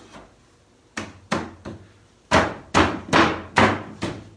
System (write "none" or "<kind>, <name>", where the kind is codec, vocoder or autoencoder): none